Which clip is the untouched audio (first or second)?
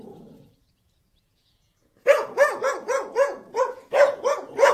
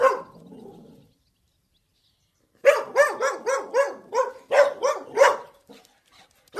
second